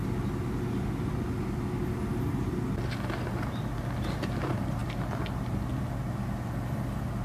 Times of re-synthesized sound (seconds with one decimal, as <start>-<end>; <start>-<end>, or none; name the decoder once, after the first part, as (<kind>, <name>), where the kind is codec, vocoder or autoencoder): none